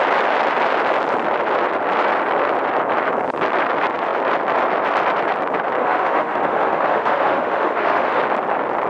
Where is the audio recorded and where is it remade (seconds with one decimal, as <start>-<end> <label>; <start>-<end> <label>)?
0.0-5.8 recorded; 5.8-8.2 remade; 8.2-8.9 recorded

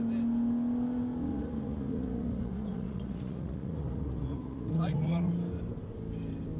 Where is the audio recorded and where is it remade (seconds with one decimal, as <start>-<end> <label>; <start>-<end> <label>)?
0.0-1.3 recorded; 1.3-5.3 remade; 5.3-6.6 recorded

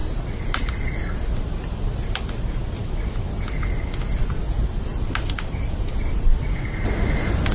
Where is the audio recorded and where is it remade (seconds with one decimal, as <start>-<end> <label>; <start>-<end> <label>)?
0.0-7.5 recorded

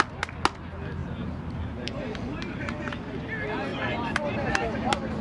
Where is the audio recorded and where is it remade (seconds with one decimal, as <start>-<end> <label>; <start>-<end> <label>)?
0.0-1.0 recorded; 1.0-2.7 remade; 2.7-3.7 recorded; 3.7-4.5 remade; 4.5-5.2 recorded

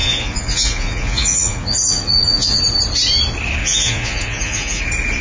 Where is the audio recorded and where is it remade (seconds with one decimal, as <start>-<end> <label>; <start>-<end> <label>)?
0.0-2.6 remade; 2.6-3.6 recorded; 3.6-4.8 remade; 4.8-5.2 recorded

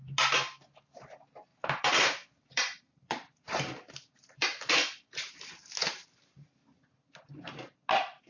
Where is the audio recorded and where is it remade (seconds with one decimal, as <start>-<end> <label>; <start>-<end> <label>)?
0.0-1.5 recorded; 1.5-5.4 remade; 5.4-8.3 recorded